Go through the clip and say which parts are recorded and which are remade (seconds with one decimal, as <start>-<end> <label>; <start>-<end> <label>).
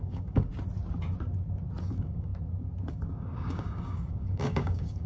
0.0-0.5 remade; 0.5-1.8 recorded; 1.8-2.3 remade; 2.3-2.9 recorded; 2.9-5.1 remade